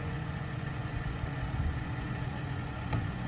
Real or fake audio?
fake